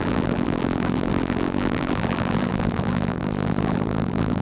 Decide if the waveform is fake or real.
fake